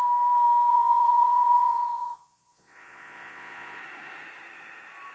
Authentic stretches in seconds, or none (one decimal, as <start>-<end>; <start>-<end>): 0.0-0.7; 3.8-5.1